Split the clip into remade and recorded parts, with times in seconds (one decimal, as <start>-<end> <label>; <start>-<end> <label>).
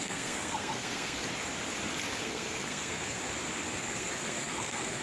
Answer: 0.0-1.2 remade; 1.2-2.2 recorded; 2.2-3.2 remade; 3.2-3.8 recorded; 3.8-5.0 remade